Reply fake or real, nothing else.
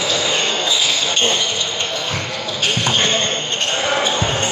fake